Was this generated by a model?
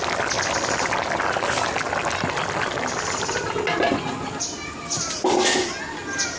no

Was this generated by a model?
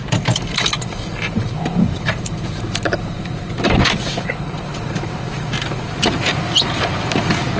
yes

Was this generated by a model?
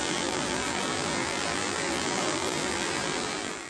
yes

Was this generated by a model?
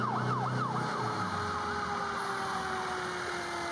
no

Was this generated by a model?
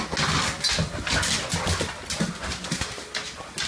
no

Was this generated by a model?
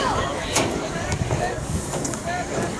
yes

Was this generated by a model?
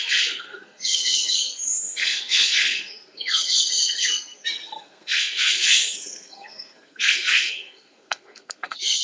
yes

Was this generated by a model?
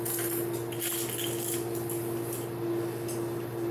no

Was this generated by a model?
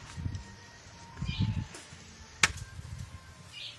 no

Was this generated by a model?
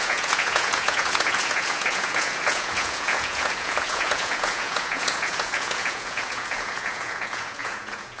yes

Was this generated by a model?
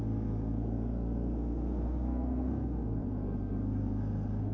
yes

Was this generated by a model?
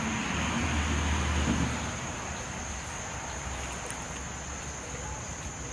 no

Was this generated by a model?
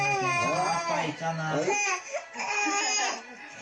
no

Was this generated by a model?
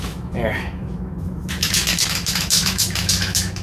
yes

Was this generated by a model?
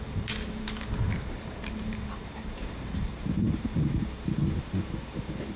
yes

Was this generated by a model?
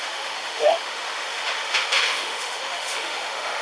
yes